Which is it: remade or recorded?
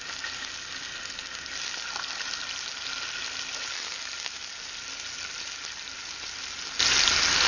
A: recorded